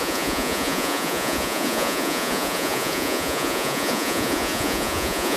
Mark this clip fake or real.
fake